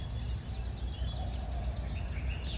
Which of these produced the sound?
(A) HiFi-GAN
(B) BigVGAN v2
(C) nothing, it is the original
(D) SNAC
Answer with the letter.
C